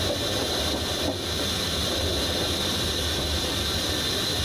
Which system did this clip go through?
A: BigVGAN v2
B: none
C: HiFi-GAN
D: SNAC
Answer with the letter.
B